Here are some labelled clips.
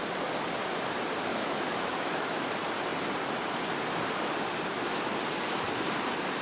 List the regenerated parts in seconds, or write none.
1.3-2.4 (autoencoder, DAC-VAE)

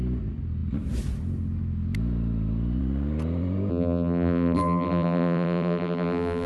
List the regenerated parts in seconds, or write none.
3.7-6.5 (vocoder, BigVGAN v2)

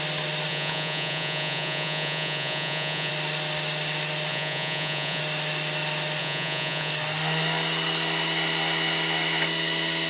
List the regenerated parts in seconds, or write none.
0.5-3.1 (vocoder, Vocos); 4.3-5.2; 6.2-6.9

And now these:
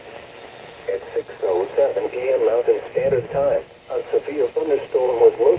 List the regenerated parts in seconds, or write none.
0.0-0.9 (autoencoder, DAC-VAE); 1.9-3.6; 4.0-4.6